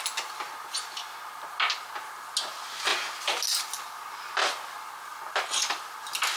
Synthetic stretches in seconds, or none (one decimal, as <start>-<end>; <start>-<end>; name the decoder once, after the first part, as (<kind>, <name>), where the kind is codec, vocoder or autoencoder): none